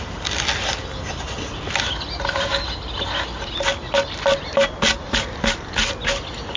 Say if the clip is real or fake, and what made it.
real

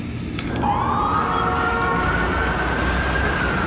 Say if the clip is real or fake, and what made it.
real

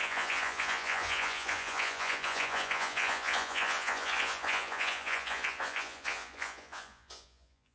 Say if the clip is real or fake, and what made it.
fake, vocoder, Vocos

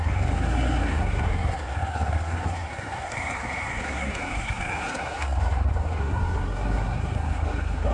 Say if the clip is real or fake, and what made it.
fake, codec, SNAC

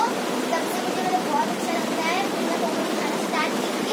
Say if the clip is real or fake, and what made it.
real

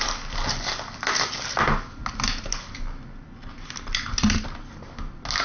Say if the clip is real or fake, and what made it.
real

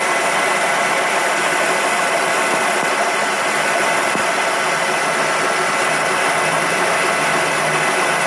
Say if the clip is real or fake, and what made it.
real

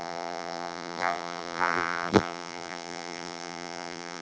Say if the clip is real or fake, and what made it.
fake, vocoder, BigVGAN v2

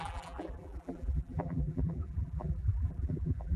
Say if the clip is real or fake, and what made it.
fake, vocoder, BigVGAN v2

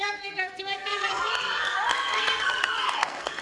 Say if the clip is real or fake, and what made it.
fake, codec, SNAC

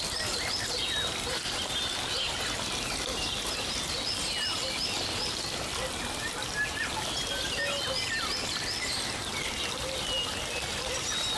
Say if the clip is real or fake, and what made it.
real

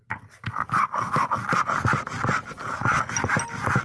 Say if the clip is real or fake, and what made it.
real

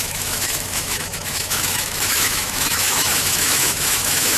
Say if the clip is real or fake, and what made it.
fake, autoencoder, DAC-VAE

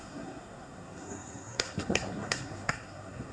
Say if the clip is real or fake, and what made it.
fake, codec, SNAC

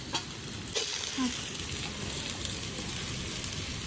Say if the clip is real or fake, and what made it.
real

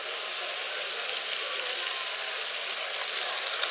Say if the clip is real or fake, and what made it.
real